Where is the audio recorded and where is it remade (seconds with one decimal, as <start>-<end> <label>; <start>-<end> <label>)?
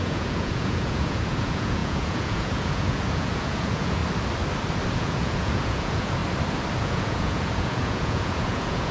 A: 0.0-4.0 remade; 4.0-4.9 recorded; 4.9-6.2 remade; 6.2-6.8 recorded; 6.8-8.9 remade